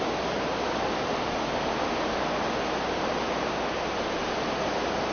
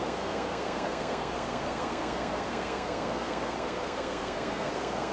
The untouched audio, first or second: first